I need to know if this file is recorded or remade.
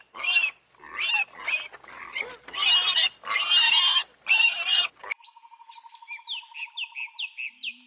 recorded